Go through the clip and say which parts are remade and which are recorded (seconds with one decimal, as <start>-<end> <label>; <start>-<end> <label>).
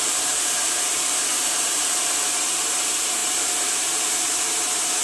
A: 0.0-5.0 remade